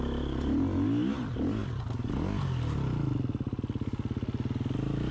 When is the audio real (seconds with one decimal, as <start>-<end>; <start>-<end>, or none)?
0.0-5.1